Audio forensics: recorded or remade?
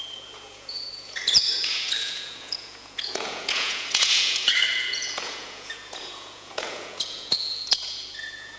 remade